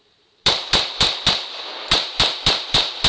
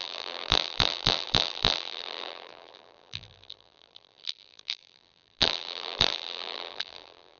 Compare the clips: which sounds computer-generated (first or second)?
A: second